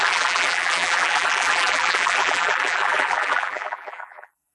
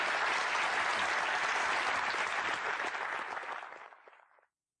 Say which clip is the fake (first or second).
first